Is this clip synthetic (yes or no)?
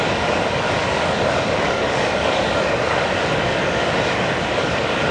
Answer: yes